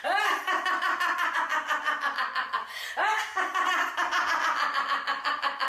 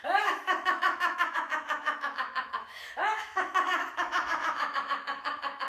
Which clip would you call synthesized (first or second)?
second